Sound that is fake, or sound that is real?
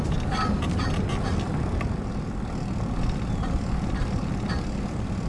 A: real